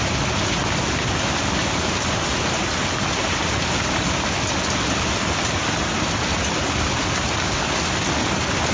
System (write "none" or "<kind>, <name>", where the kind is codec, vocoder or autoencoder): none